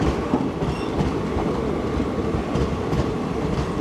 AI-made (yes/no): no